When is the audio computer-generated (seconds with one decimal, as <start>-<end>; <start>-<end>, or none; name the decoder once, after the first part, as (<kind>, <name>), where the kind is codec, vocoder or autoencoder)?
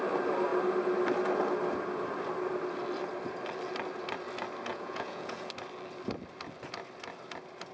4.7-5.5 (vocoder, Vocos)